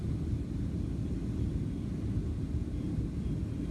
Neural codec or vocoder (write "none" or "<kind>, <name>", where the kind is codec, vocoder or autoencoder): none